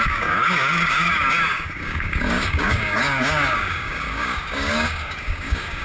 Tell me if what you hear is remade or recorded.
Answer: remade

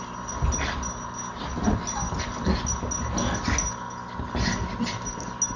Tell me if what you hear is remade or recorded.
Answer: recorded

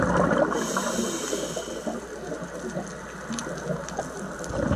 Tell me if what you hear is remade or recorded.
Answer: recorded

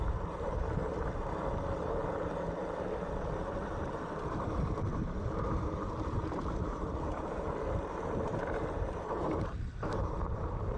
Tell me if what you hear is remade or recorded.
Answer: remade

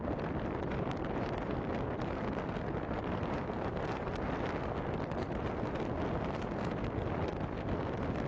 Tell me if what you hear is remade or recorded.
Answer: recorded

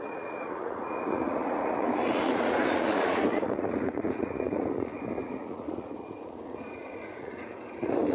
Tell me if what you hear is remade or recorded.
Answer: remade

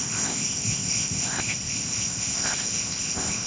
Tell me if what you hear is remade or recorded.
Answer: remade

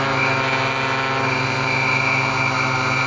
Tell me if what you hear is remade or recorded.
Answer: recorded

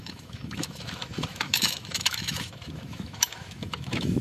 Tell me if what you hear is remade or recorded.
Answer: remade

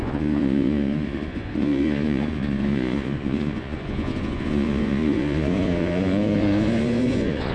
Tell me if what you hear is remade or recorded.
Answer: remade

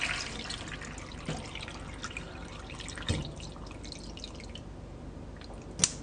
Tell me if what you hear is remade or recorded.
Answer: recorded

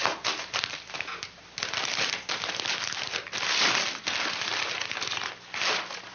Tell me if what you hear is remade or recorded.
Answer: recorded